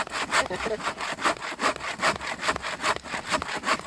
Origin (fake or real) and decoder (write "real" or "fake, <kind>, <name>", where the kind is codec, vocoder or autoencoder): real